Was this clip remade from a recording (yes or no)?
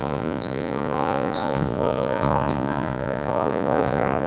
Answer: yes